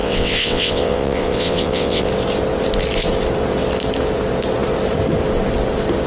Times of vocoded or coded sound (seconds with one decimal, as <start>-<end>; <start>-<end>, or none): 0.0-2.1